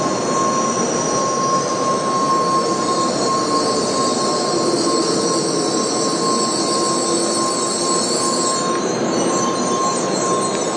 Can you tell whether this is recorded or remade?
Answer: recorded